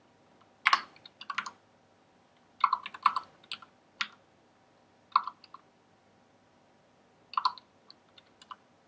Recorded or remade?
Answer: recorded